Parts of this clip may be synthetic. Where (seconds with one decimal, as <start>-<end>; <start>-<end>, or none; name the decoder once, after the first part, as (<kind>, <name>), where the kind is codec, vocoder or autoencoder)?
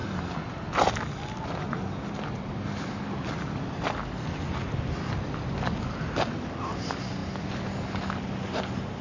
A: none